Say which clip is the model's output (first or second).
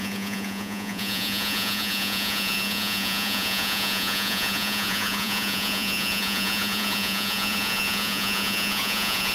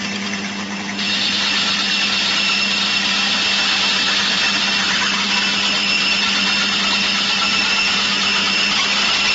first